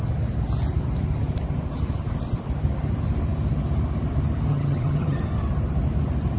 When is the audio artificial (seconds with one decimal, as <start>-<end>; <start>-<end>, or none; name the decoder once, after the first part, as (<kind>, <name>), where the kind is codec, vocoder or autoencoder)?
4.5-5.2 (vocoder, HiFi-GAN)